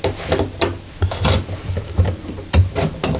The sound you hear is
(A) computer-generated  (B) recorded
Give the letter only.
B